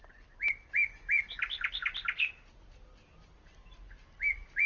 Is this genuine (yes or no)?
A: yes